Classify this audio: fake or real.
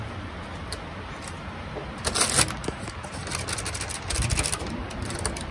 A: real